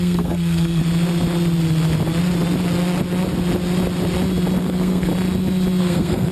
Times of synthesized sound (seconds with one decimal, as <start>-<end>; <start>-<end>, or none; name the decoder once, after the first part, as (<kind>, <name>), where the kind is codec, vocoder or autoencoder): 0.0-0.8 (codec, SNAC); 4.6-5.1; 5.8-6.3